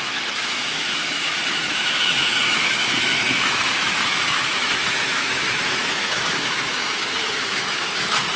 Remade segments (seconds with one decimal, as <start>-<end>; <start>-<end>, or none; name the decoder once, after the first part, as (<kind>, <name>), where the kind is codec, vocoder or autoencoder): 0.0-8.4 (autoencoder, DAC-VAE)